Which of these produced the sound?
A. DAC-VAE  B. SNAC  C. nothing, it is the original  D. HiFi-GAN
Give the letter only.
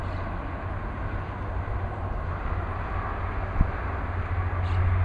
C